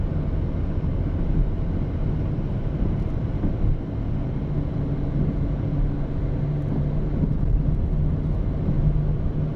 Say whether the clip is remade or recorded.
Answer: recorded